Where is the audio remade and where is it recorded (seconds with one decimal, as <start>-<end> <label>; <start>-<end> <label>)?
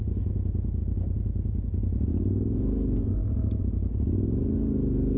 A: 0.0-5.2 recorded